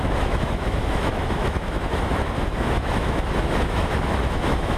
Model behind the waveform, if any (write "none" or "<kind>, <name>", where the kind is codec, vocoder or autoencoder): autoencoder, DAC-VAE